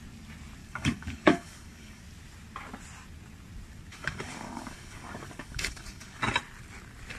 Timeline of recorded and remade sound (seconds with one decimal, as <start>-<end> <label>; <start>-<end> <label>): 0.0-0.6 recorded; 0.6-2.0 remade; 2.0-3.9 recorded; 3.9-6.3 remade; 6.3-7.2 recorded